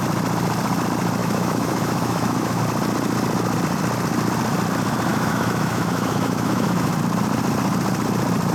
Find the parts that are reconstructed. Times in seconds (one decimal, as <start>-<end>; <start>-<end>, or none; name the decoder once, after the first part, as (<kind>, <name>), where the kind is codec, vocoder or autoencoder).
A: 1.2-2.6 (autoencoder, DAC-VAE); 5.1-6.9